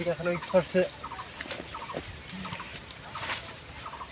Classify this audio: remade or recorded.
remade